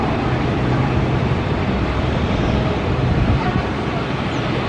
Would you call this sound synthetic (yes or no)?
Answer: yes